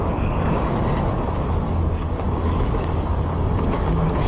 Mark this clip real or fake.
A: fake